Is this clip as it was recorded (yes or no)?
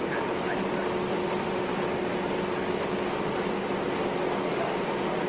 yes